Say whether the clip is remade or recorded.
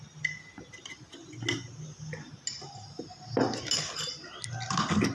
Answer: recorded